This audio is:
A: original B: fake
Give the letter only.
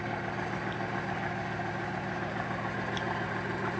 A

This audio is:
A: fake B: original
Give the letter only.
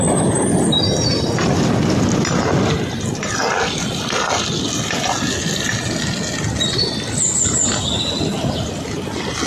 B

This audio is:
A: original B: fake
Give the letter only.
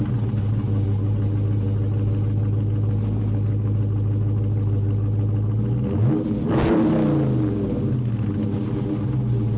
A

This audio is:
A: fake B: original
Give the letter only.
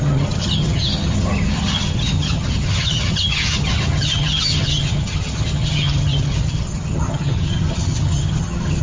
A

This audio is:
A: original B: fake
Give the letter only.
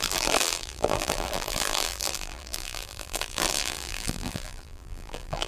B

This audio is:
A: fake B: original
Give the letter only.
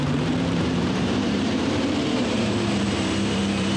A